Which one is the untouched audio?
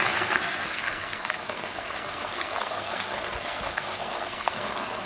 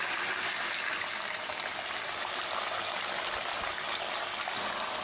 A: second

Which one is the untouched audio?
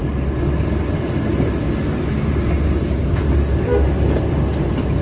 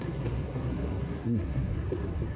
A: first